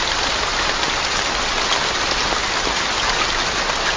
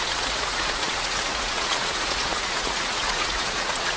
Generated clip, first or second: second